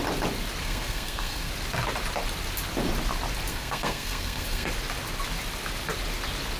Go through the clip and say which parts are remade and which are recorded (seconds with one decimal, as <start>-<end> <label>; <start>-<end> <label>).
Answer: 0.0-0.6 recorded; 0.6-1.5 remade; 1.5-3.5 recorded; 3.5-4.7 remade; 4.7-6.6 recorded